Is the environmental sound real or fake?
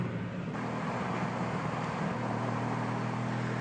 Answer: real